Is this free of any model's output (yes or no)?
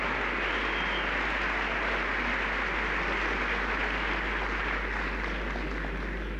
yes